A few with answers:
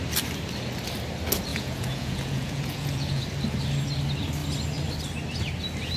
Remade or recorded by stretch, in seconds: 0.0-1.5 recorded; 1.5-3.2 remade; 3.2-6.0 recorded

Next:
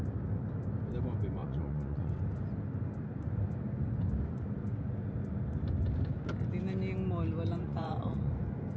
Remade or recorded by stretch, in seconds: 0.0-1.4 recorded; 1.4-2.1 remade; 2.1-7.6 recorded; 7.6-8.3 remade; 8.3-8.8 recorded

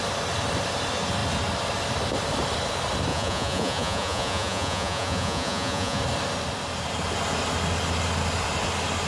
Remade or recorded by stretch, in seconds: 0.0-3.1 recorded; 3.1-6.0 remade; 6.0-9.1 recorded

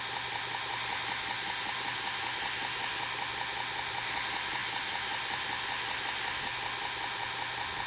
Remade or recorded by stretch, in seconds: 0.0-7.9 recorded

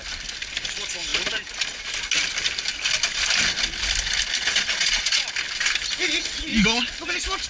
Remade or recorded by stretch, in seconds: 0.0-4.5 recorded; 4.5-5.2 remade; 5.2-7.5 recorded

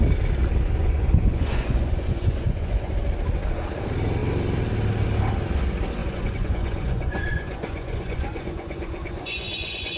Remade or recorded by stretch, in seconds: 0.0-0.8 recorded; 0.8-2.9 remade; 2.9-6.0 recorded; 6.0-10.0 remade

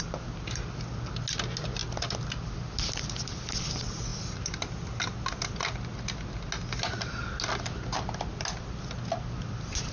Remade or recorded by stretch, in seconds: 0.0-9.9 recorded

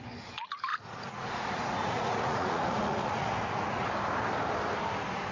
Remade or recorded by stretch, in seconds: 0.0-0.7 recorded; 0.7-3.9 remade; 3.9-5.3 recorded